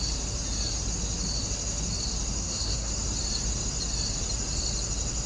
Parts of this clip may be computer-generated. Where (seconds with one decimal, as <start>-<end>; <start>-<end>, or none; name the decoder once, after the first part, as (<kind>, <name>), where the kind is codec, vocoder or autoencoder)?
2.4-2.9 (codec, SNAC)